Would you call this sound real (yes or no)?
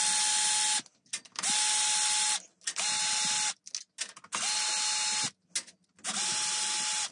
yes